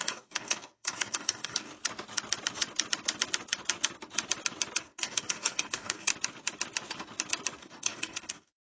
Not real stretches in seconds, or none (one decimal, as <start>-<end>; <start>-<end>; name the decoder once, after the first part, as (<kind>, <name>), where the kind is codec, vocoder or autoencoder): 0.0-1.7 (codec, DAC); 4.8-6.1; 7.6-8.7